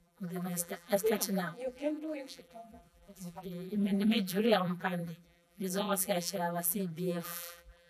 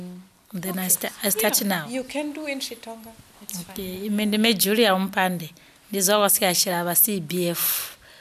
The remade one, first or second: first